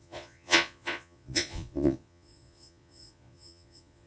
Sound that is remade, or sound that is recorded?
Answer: remade